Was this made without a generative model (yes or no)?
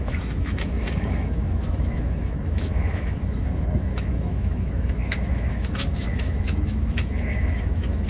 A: no